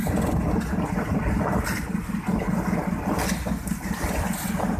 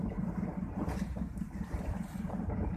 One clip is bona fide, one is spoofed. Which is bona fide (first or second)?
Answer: first